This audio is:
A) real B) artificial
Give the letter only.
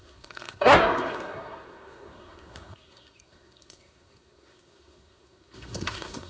B